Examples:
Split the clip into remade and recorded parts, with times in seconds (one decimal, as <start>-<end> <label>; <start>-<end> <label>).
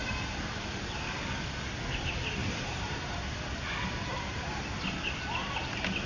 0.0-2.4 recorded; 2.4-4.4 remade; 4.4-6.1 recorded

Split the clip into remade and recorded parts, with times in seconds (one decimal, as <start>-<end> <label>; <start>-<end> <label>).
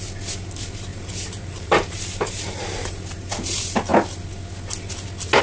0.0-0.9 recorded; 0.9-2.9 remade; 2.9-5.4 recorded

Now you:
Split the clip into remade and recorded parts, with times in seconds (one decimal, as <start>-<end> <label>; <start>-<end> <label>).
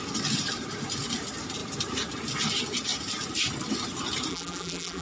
0.0-4.3 recorded; 4.3-5.0 remade